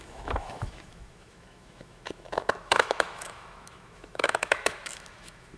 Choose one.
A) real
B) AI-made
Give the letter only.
B